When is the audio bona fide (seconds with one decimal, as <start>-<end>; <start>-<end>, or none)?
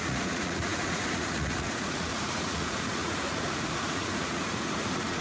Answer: none